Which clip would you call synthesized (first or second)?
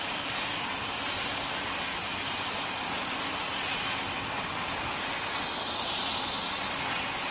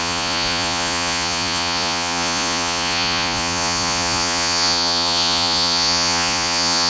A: second